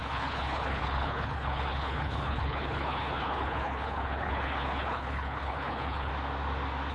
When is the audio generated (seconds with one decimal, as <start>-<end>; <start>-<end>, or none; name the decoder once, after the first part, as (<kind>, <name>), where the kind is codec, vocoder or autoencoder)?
0.0-6.1 (codec, HILCodec)